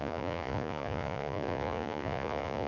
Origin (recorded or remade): remade